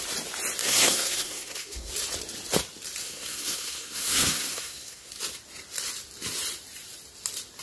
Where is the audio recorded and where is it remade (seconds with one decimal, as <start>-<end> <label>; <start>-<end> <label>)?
0.0-0.6 recorded; 0.6-1.9 remade; 1.9-3.0 recorded; 3.0-5.1 remade; 5.1-7.6 recorded